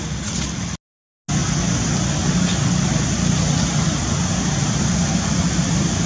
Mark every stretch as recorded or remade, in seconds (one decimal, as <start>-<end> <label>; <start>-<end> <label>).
0.0-6.1 recorded